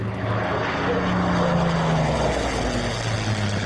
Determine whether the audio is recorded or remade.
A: recorded